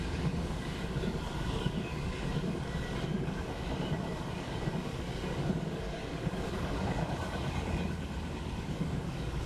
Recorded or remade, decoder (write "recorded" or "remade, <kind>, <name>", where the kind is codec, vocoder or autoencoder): remade, codec, DAC